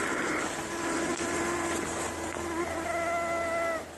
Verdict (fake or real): real